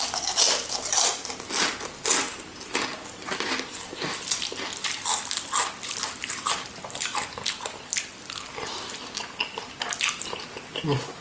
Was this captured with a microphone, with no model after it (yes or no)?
yes